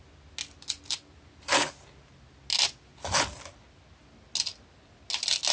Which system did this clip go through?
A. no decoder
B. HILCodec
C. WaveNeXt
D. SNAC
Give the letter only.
A